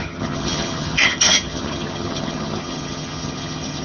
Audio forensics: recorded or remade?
remade